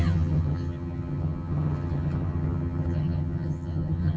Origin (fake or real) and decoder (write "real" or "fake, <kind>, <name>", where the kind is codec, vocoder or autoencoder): fake, vocoder, HiFi-GAN